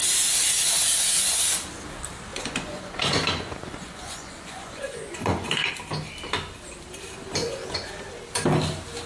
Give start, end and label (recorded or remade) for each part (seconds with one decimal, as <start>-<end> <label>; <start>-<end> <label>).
0.0-2.3 recorded; 2.3-5.7 remade; 5.7-7.4 recorded; 7.4-7.9 remade; 7.9-9.1 recorded